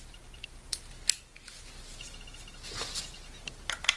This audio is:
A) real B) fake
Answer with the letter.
A